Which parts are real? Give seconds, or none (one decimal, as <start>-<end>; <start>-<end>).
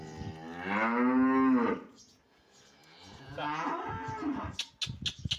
0.0-1.9; 3.7-5.4